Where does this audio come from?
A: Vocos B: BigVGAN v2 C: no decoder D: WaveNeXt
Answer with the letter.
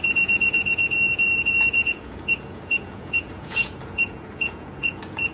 A